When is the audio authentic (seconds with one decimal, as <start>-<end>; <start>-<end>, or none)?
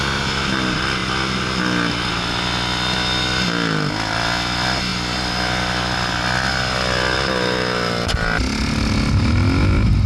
0.0-10.1